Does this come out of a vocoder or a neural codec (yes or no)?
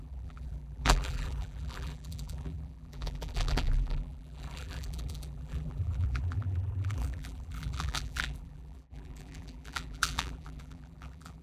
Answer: yes